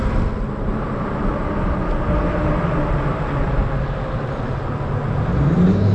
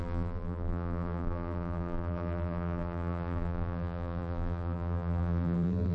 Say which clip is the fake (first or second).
second